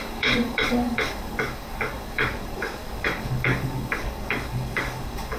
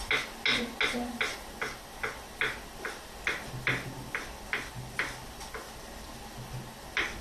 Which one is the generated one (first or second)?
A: first